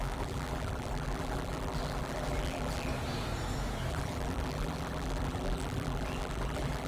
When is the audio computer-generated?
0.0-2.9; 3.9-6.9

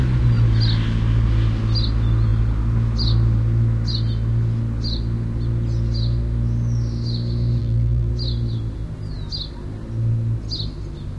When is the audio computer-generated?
7.6-8.1

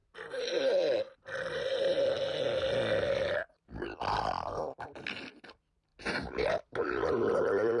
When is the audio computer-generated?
0.7-2.3; 3.3-4.6; 5.3-5.9; 7.3-7.8

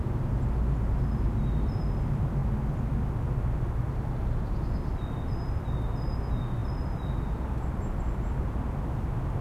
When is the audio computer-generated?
none

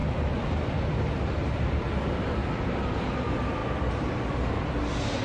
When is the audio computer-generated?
2.4-3.1

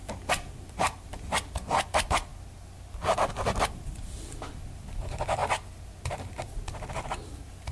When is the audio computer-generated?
0.0-2.3; 3.3-5.4; 6.9-7.7

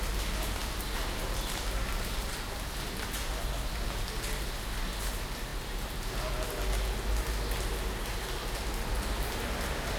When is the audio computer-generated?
0.6-2.3; 5.5-6.1

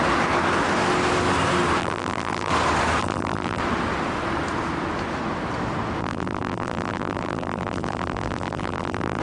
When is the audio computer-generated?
1.8-2.5; 3.0-3.6; 6.0-9.2